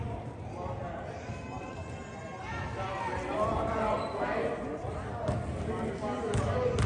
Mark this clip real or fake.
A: real